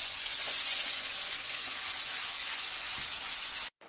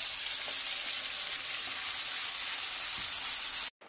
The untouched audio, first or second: second